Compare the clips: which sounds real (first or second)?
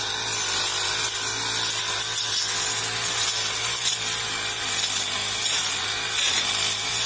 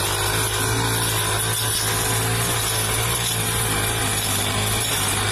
first